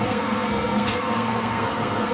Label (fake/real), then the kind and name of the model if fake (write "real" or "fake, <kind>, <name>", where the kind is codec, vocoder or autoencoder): fake, codec, SNAC